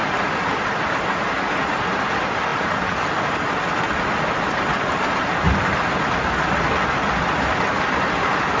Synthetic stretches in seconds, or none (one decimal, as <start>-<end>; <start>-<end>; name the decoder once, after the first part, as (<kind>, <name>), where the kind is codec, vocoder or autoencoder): none